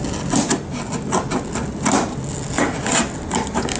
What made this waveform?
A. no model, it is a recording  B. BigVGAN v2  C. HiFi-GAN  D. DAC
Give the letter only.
A